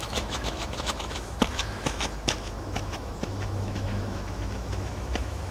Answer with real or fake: fake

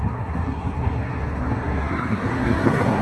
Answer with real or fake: fake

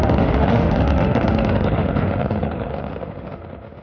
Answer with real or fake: fake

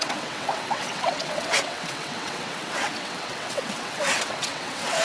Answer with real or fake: fake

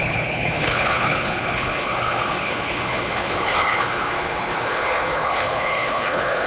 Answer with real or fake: fake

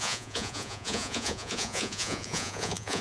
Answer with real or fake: fake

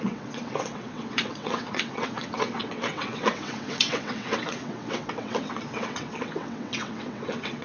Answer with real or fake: fake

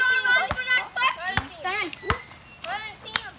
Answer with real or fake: real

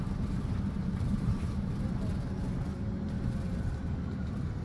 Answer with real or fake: fake